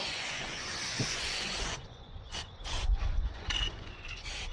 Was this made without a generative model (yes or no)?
no